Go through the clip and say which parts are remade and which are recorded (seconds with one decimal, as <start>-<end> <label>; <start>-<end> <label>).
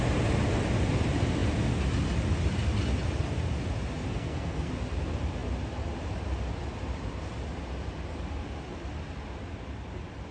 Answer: 0.0-4.1 recorded; 4.1-4.7 remade; 4.7-10.3 recorded